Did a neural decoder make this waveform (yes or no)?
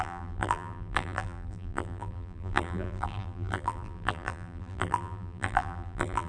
yes